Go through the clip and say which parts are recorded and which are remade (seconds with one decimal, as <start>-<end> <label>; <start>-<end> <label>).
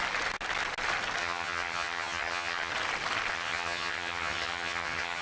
0.0-1.2 recorded; 1.2-2.7 remade; 2.7-3.3 recorded; 3.3-5.2 remade